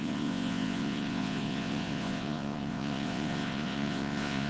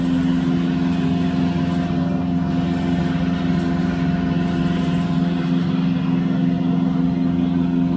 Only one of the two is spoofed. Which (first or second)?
first